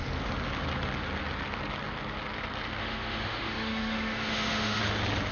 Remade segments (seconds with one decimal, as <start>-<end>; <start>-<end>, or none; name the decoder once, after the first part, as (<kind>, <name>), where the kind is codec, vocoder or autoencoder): 2.8-4.8 (autoencoder, DAC-VAE)